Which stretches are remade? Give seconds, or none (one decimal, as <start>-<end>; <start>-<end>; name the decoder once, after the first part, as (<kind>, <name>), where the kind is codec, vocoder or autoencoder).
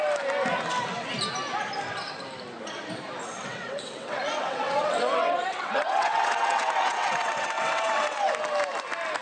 3.2-8.3 (vocoder, WaveNeXt)